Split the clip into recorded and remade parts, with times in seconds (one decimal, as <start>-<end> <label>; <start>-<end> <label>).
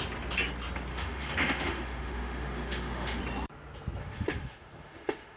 0.0-0.9 recorded; 0.9-3.2 remade; 3.2-4.0 recorded; 4.0-5.4 remade